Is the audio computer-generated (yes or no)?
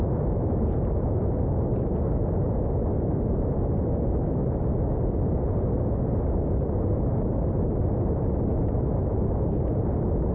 no